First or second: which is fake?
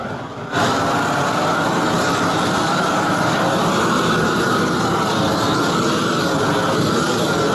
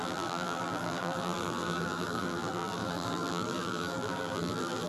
second